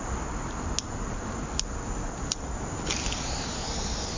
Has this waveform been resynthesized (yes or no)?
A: no